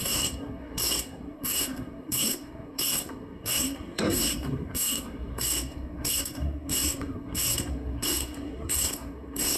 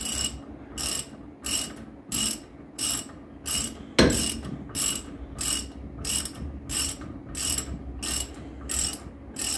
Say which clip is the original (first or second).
second